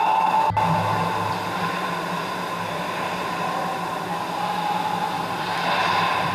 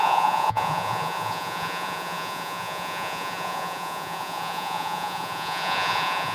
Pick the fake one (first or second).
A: second